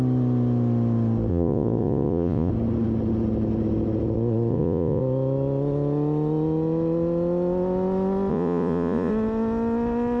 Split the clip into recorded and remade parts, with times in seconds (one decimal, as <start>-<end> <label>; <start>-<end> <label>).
0.0-1.3 recorded; 1.3-2.5 remade; 2.5-4.5 recorded; 4.5-5.0 remade; 5.0-8.3 recorded; 8.3-9.1 remade; 9.1-10.2 recorded